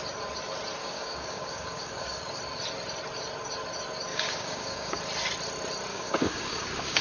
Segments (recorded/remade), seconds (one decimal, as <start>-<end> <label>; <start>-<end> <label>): 0.0-0.8 recorded; 0.8-2.4 remade; 2.4-4.1 recorded; 4.1-5.0 remade; 5.0-5.9 recorded; 5.9-7.0 remade